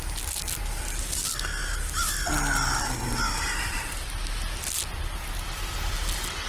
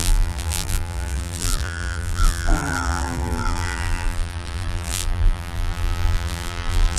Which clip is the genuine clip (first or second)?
first